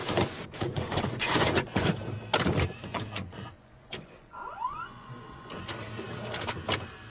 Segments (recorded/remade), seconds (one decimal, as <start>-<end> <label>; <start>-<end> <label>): 0.0-1.9 remade; 1.9-2.8 recorded; 2.8-5.5 remade; 5.5-7.1 recorded